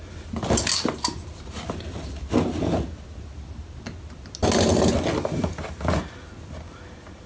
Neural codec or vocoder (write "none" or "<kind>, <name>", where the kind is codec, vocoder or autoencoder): none